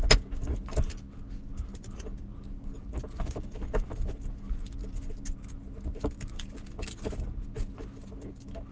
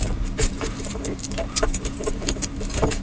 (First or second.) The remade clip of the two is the second